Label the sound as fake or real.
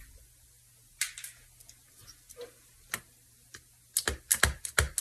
real